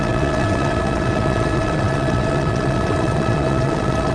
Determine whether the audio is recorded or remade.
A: remade